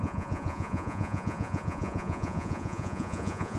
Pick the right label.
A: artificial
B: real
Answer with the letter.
A